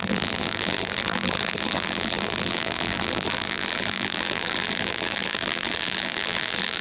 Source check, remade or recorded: remade